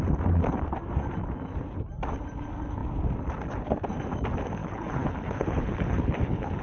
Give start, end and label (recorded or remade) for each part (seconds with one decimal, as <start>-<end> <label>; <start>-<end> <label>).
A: 0.0-4.6 recorded; 4.6-6.6 remade